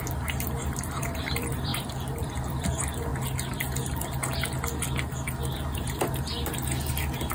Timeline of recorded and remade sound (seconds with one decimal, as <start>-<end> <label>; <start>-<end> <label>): 0.0-3.1 remade; 3.1-7.3 recorded